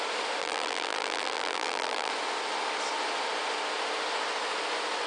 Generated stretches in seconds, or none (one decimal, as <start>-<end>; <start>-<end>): 0.4-2.1